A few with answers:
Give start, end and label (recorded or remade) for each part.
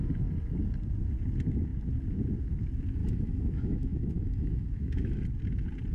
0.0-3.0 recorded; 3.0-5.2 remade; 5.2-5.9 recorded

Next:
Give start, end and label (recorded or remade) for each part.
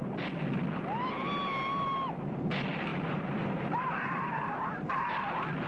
0.0-2.9 recorded; 2.9-5.1 remade; 5.1-5.7 recorded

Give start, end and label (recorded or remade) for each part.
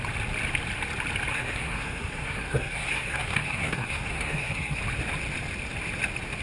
0.0-1.3 recorded; 1.3-4.8 remade; 4.8-6.4 recorded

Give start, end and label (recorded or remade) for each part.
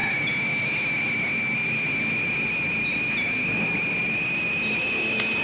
0.0-5.4 recorded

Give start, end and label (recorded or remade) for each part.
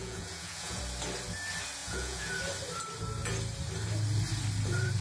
0.0-0.8 remade; 0.8-1.8 recorded; 1.8-2.3 remade; 2.3-5.0 recorded